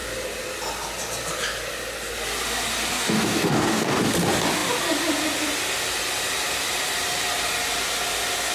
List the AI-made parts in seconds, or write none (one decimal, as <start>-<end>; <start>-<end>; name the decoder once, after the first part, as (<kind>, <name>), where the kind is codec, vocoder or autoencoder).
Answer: 2.9-4.0 (codec, DAC)